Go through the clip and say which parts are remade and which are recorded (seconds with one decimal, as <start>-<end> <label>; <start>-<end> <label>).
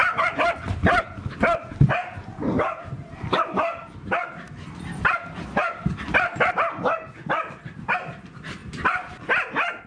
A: 0.0-9.9 recorded